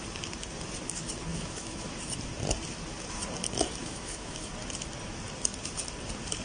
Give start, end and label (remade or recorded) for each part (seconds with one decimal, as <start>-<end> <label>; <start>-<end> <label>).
0.0-1.3 recorded; 1.3-1.9 remade; 1.9-3.8 recorded; 3.8-4.5 remade; 4.5-6.4 recorded